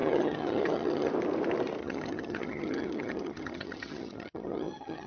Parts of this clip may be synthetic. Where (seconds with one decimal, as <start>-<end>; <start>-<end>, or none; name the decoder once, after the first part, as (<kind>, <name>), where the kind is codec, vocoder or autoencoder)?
0.0-1.1 (vocoder, HiFi-GAN); 1.8-5.1